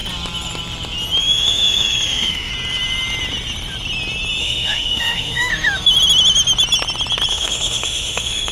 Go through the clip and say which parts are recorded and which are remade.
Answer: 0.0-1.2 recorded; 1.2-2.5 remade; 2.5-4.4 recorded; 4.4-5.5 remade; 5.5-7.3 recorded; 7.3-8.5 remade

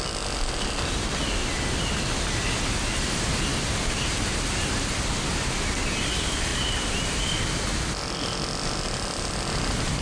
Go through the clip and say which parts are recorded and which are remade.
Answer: 0.0-10.0 recorded

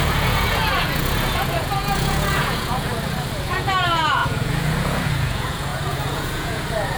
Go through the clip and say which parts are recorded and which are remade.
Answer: 0.0-2.9 remade; 2.9-3.4 recorded; 3.4-7.0 remade

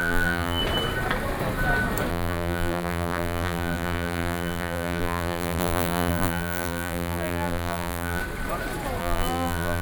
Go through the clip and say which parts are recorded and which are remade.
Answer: 0.0-0.6 remade; 0.6-2.1 recorded; 2.1-8.2 remade; 8.2-9.0 recorded; 9.0-9.8 remade

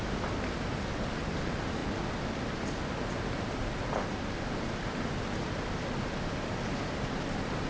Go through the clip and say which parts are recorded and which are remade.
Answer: 0.0-1.8 remade; 1.8-6.4 recorded; 6.4-7.7 remade

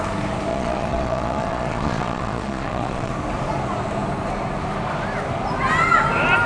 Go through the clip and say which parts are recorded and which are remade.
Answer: 0.0-0.5 recorded; 0.5-3.1 remade; 3.1-6.5 recorded

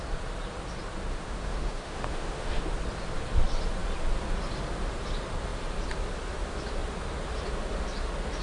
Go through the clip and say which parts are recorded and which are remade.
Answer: 0.0-1.1 recorded; 1.1-2.6 remade; 2.6-8.4 recorded

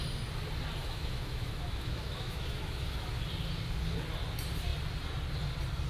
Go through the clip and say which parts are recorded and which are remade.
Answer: 0.0-0.8 recorded; 0.8-3.2 remade; 3.2-5.9 recorded